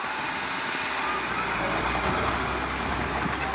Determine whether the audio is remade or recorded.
recorded